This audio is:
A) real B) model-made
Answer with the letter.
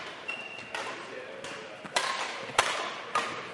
A